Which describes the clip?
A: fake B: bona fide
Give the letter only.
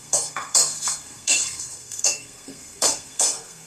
A